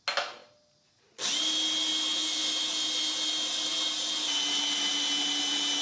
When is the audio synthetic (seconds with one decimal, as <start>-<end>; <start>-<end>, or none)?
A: none